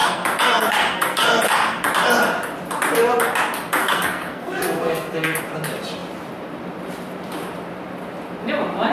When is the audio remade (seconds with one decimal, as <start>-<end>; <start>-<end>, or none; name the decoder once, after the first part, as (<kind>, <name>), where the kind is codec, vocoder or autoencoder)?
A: 0.0-1.9 (codec, SNAC); 3.8-5.4